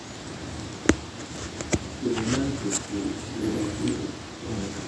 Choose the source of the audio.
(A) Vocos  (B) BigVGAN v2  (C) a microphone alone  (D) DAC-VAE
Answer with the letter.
C